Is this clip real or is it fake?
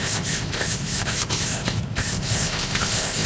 fake